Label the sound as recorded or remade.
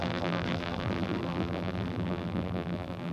remade